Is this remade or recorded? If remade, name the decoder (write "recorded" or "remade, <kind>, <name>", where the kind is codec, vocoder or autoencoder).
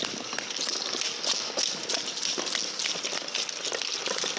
recorded